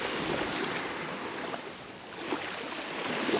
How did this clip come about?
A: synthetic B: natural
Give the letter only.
B